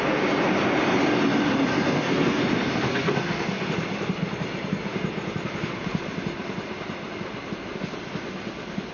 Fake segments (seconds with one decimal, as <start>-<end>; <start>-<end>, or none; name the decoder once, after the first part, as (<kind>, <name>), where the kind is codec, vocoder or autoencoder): 1.7-2.4 (codec, SNAC); 2.9-3.7